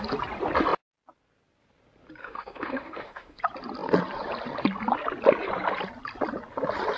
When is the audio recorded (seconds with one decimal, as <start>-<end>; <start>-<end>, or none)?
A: 0.0-2.2; 3.4-7.0